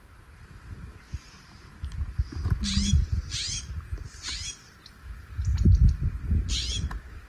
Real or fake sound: real